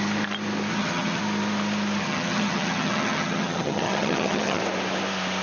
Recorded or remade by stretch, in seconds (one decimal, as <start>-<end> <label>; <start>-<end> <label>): 0.0-0.7 recorded; 0.7-1.2 remade; 1.2-2.0 recorded; 2.0-4.6 remade; 4.6-5.4 recorded

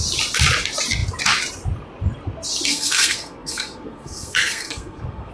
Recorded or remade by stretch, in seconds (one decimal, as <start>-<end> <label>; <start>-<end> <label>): 0.0-2.7 recorded; 2.7-5.3 remade

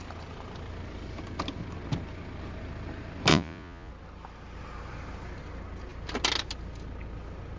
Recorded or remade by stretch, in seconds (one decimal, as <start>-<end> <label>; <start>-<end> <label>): 0.0-3.3 recorded; 3.3-3.9 remade; 3.9-7.6 recorded

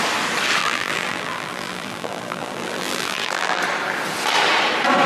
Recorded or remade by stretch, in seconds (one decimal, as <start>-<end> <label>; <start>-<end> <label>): 0.0-0.6 recorded; 0.6-3.6 remade; 3.6-5.1 recorded